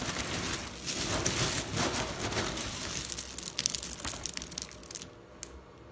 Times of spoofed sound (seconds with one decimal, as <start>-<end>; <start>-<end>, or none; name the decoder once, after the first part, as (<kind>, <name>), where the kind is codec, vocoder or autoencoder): none